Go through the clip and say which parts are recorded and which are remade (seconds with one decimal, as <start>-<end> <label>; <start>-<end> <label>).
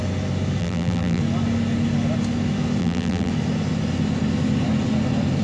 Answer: 0.0-0.6 recorded; 0.6-1.2 remade; 1.2-2.8 recorded; 2.8-3.3 remade; 3.3-5.4 recorded